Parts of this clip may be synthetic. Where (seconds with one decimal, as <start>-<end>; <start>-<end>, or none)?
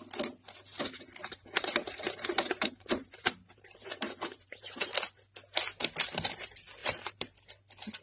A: 1.2-4.8; 6.8-7.5